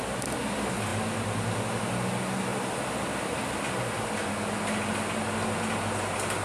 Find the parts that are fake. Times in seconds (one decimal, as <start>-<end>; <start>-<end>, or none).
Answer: none